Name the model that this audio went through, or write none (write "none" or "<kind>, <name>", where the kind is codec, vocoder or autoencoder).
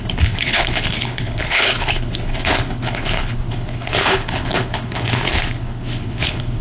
codec, HILCodec